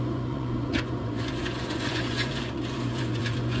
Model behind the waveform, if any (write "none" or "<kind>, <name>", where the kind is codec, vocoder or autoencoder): vocoder, Vocos